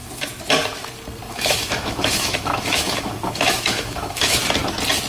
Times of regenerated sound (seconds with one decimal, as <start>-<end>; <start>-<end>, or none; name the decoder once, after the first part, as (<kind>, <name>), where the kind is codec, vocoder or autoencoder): 1.3-4.4 (autoencoder, DAC-VAE)